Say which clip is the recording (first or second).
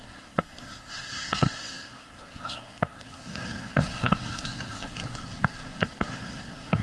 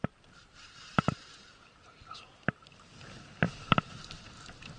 second